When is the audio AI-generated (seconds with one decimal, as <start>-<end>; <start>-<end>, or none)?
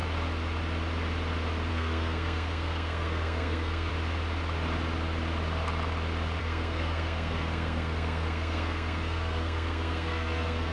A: 1.7-3.9; 6.4-10.7